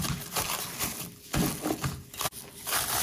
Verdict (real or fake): real